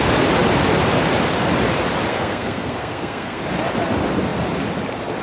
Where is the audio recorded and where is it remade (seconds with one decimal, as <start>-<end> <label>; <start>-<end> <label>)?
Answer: 0.0-2.1 recorded; 2.1-3.4 remade; 3.4-5.2 recorded